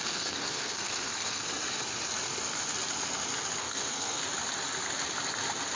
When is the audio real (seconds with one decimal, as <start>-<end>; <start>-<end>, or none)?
1.4-3.6; 4.2-5.8